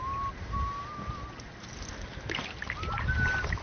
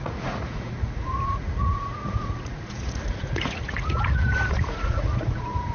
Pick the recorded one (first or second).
first